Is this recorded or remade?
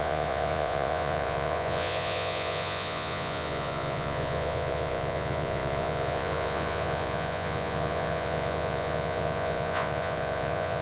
remade